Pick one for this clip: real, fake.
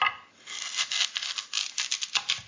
real